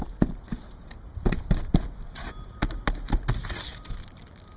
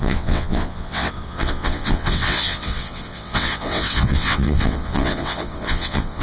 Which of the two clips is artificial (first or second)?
second